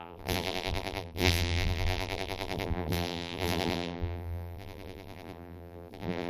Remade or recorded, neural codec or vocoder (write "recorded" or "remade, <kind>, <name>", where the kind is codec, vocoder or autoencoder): remade, vocoder, BigVGAN v2